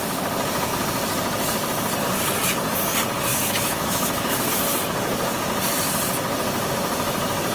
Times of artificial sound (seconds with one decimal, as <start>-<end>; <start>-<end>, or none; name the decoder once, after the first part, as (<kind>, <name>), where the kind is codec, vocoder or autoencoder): 3.3-4.5 (autoencoder, DAC-VAE)